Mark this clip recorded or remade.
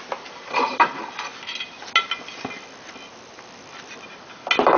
recorded